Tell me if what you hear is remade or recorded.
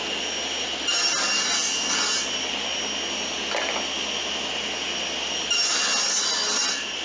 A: recorded